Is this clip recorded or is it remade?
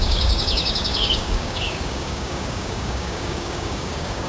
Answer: remade